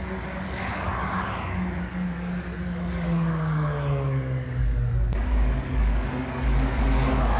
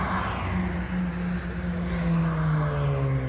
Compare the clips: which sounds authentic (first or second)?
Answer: second